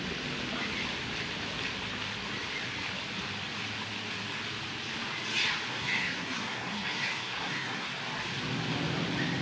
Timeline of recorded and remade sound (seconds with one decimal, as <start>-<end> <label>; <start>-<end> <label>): 0.0-5.7 recorded; 5.7-8.0 remade; 8.0-9.4 recorded